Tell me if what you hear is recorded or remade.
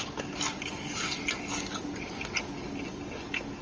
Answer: recorded